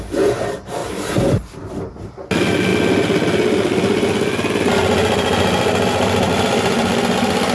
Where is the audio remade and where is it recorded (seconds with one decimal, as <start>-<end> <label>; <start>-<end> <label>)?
0.0-0.8 recorded; 0.8-2.1 remade; 2.1-7.5 recorded